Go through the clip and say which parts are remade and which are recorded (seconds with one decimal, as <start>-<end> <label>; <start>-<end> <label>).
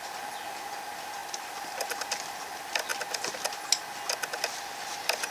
0.0-1.2 recorded; 1.2-2.5 remade; 2.5-2.9 recorded; 2.9-3.5 remade; 3.5-5.3 recorded